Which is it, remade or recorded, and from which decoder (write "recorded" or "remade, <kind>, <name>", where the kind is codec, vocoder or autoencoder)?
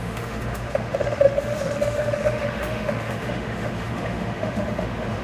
remade, autoencoder, DAC-VAE